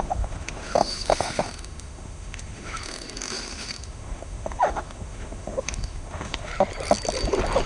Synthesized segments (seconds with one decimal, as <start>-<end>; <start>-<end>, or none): 0.0-6.5